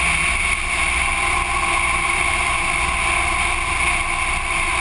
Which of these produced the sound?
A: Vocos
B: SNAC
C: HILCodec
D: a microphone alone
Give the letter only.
D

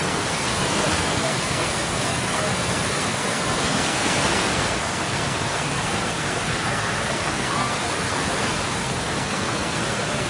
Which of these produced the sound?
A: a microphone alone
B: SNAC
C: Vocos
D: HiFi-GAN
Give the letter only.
B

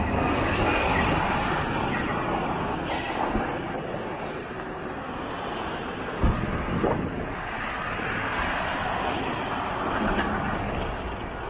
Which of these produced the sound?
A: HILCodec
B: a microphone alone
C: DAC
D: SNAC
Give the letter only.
B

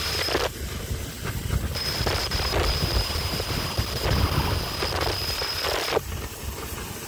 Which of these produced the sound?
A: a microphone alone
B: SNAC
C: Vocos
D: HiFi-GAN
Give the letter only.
A